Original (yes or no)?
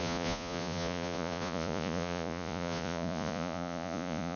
no